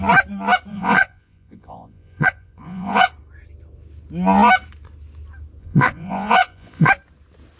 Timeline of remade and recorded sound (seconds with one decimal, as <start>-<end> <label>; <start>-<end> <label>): 0.0-0.7 recorded; 0.7-3.1 remade; 3.1-5.6 recorded; 5.6-6.9 remade; 6.9-7.6 recorded